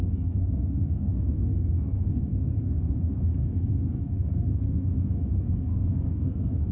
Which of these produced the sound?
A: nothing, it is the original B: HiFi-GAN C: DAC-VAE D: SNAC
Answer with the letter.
D